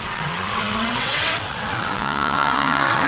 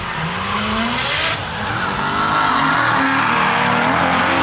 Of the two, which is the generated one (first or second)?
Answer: first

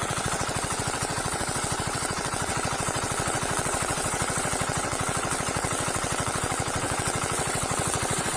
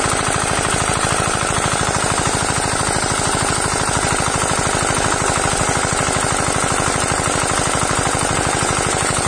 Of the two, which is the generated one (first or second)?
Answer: first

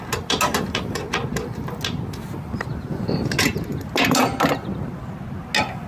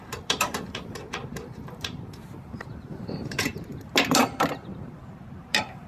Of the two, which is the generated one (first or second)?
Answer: second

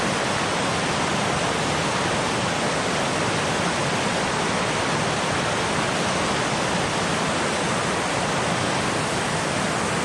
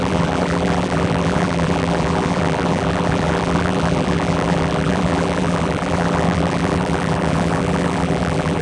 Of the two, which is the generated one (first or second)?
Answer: second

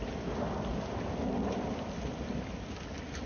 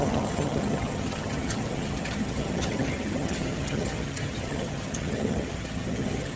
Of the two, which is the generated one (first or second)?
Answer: second